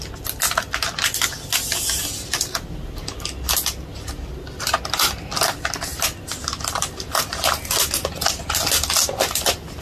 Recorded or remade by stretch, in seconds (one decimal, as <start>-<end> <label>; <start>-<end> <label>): 0.0-9.8 recorded